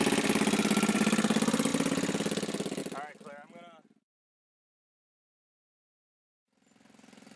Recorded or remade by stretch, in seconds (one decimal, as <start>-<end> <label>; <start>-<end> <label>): 0.0-7.4 recorded